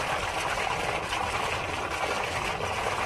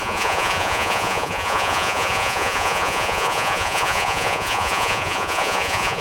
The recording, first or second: first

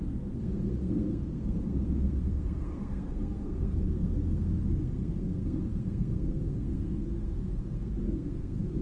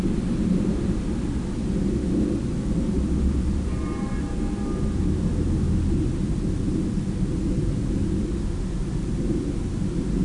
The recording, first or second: second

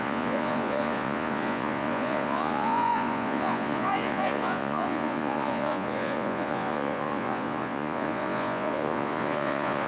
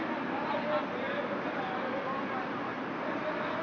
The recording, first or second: second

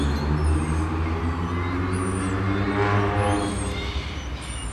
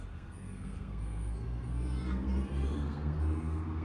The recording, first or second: first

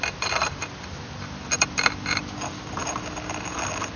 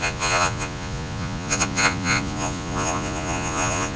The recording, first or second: first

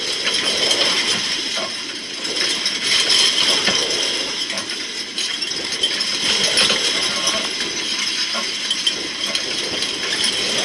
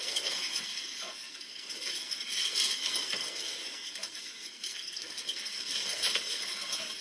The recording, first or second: first